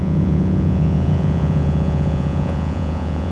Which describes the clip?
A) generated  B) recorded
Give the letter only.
A